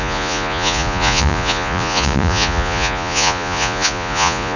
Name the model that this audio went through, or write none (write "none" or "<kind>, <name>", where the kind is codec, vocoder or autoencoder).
vocoder, Vocos